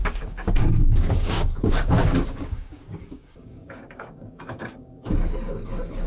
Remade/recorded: remade